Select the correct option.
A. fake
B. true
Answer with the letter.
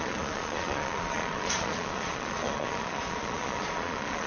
A